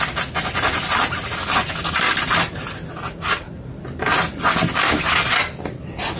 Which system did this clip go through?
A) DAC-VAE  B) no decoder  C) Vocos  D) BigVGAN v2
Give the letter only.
B